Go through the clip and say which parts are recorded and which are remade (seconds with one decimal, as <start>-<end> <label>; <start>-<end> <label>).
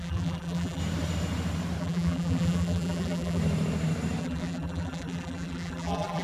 0.0-0.8 remade; 0.8-1.8 recorded; 1.8-3.4 remade; 3.4-4.2 recorded; 4.2-6.2 remade